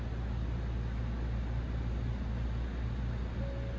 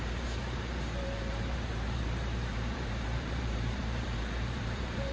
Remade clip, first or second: second